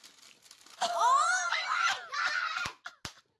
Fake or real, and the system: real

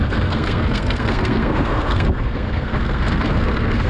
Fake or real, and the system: fake, codec, SNAC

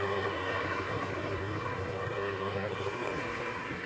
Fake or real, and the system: fake, codec, SNAC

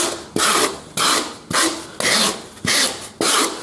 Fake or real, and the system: real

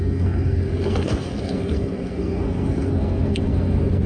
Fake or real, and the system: fake, codec, SNAC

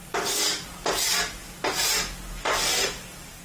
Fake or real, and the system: real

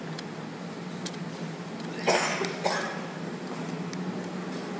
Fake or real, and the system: real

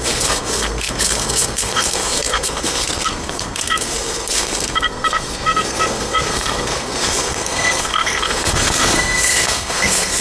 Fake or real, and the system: fake, codec, SNAC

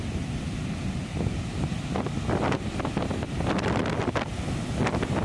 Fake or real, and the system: real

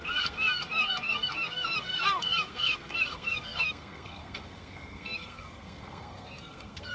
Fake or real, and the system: fake, codec, SNAC